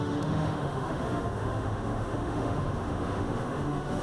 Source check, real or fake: fake